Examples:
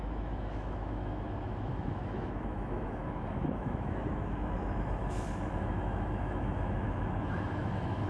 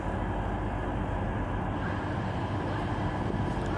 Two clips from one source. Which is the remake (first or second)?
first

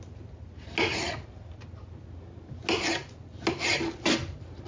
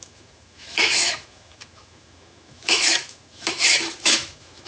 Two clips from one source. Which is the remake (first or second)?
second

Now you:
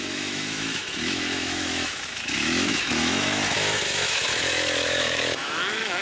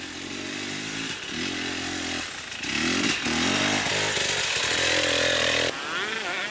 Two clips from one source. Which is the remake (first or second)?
first